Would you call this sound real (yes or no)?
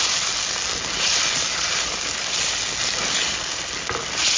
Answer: yes